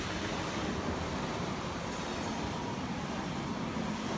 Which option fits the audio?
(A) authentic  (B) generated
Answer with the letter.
A